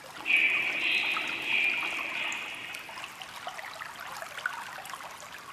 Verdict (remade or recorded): recorded